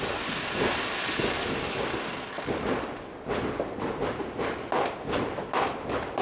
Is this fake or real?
real